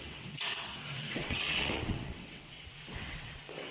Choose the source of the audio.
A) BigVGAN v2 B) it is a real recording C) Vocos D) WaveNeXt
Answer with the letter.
D